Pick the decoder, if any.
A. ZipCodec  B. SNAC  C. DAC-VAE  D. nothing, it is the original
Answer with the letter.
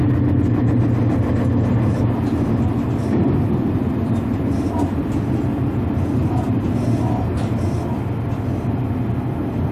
D